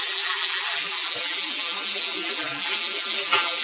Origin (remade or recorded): remade